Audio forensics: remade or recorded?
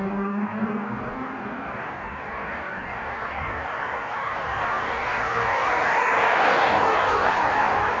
remade